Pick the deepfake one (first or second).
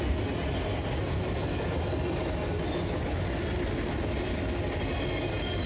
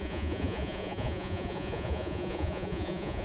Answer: second